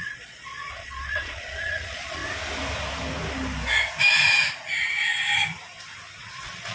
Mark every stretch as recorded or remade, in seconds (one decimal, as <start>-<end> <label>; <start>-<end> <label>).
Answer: 0.0-2.2 remade; 2.2-6.2 recorded; 6.2-6.7 remade